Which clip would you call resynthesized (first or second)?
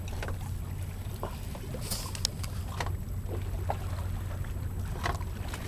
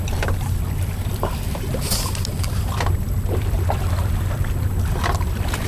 second